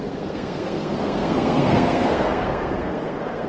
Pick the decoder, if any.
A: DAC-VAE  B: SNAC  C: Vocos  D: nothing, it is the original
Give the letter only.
B